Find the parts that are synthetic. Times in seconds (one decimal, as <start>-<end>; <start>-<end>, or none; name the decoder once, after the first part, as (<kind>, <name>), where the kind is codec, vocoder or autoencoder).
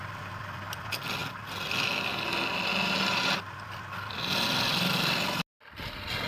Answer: none